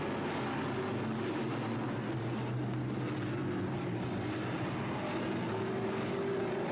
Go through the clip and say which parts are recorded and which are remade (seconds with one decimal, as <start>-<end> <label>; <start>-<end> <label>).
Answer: 0.0-6.7 recorded